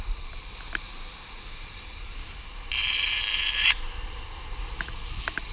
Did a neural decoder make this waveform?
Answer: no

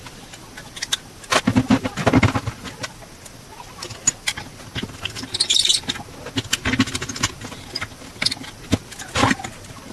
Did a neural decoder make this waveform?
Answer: no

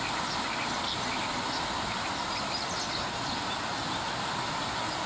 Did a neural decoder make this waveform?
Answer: no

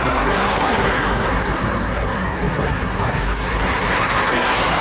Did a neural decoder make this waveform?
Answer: yes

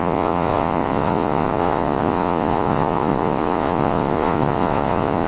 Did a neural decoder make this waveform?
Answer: yes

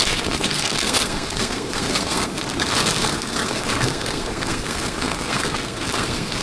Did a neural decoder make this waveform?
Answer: yes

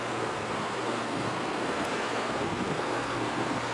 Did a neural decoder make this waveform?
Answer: yes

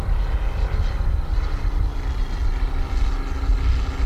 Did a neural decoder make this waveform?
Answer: no